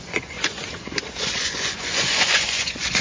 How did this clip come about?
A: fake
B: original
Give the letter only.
A